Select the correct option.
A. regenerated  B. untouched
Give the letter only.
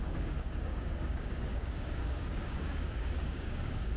A